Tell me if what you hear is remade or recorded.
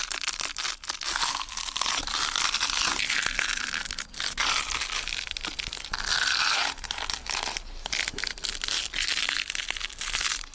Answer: recorded